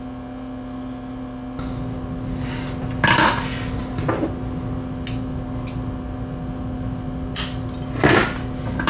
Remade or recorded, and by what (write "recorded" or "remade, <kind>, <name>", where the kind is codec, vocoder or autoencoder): recorded